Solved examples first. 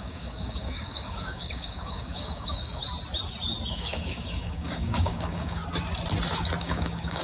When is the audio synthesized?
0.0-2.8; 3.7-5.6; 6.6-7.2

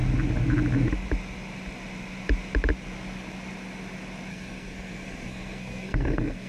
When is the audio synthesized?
4.3-6.5

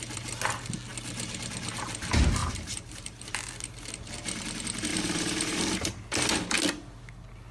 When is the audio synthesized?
2.4-3.4; 4.9-6.1

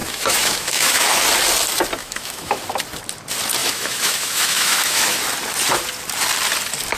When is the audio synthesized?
0.0-1.2; 2.0-2.6; 3.6-5.2

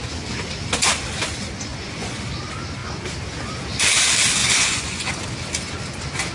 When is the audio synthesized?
1.7-2.2; 4.4-5.1

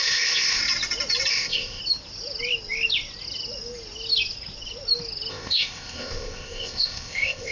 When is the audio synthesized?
0.0-0.6; 1.3-1.8; 5.3-7.5

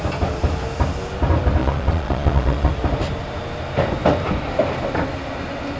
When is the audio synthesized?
1.6-2.7

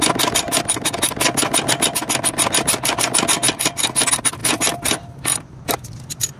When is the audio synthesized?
none